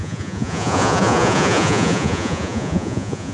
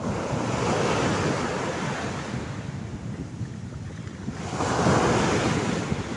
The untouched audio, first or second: second